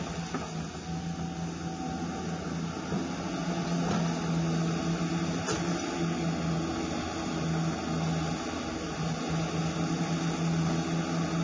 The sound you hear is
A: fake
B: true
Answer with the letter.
B